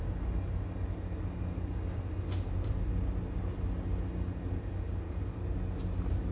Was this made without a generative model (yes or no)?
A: yes